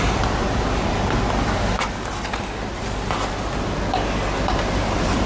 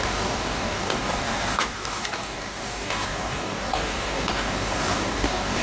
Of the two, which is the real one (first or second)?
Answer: first